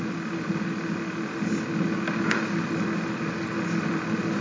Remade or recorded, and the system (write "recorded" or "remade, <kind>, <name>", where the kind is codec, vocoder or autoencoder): recorded